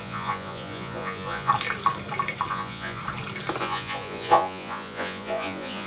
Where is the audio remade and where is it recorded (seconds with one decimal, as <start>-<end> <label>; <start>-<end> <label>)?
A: 0.0-1.5 remade; 1.5-2.5 recorded; 2.5-3.0 remade; 3.0-3.6 recorded; 3.6-5.9 remade